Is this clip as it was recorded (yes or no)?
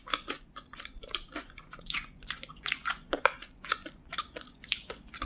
no